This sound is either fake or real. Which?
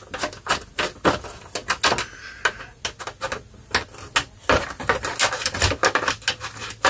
real